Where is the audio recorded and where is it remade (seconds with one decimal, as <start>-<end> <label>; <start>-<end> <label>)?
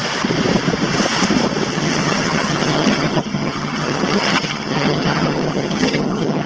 0.0-1.7 recorded; 1.7-6.5 remade